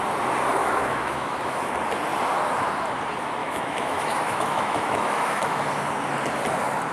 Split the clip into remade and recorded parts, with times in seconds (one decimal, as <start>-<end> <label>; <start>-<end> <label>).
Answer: 0.0-0.6 recorded; 0.6-1.7 remade; 1.7-3.4 recorded; 3.4-5.6 remade; 5.6-6.9 recorded